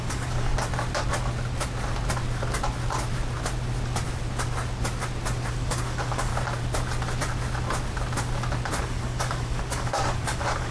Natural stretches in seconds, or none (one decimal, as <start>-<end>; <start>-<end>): 0.5-5.5; 6.3-8.8